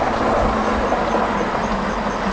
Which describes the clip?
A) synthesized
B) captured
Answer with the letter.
B